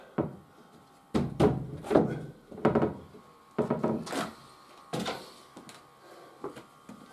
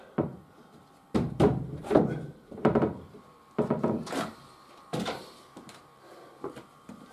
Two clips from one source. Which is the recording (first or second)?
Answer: first